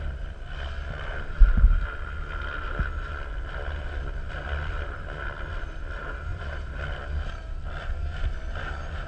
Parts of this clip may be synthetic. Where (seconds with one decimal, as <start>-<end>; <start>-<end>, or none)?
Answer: 6.3-6.8